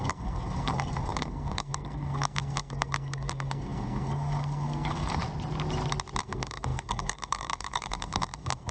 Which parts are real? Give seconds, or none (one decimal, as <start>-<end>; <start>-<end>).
5.2-6.2